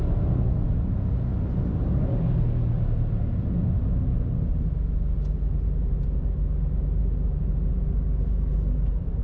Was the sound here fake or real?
real